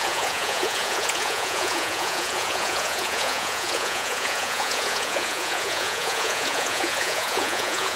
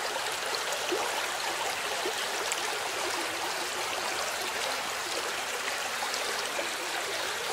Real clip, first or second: second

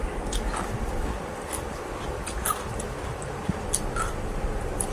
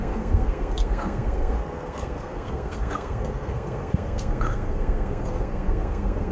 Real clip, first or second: first